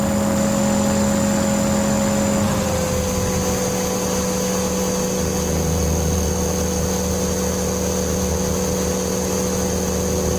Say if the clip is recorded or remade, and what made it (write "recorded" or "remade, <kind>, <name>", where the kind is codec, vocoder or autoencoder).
recorded